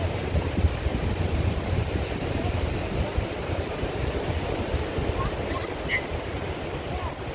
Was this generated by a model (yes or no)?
no